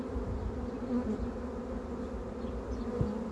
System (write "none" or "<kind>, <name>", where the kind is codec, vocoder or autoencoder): none